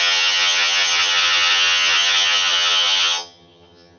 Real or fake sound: fake